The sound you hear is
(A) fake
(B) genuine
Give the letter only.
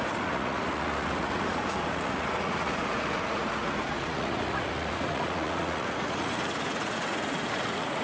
A